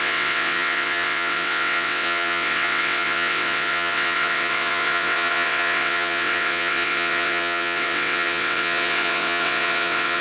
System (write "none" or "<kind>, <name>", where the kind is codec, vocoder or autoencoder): vocoder, WaveNeXt